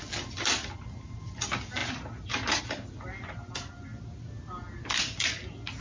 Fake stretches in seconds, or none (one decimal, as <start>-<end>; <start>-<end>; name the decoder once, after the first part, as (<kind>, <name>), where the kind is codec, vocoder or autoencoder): 1.8-2.6 (vocoder, BigVGAN v2)